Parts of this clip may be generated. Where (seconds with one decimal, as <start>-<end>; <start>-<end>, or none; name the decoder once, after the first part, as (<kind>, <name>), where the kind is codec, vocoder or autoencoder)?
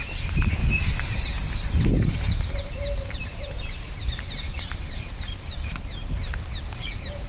0.0-0.6 (vocoder, BigVGAN v2); 2.0-6.2; 6.8-7.3